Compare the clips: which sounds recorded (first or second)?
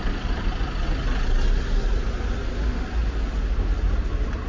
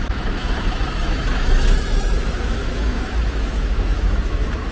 first